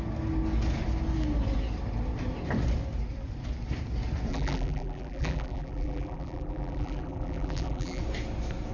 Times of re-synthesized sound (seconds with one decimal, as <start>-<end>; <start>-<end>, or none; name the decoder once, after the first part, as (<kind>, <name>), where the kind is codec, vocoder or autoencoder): 4.3-8.0 (vocoder, BigVGAN v2)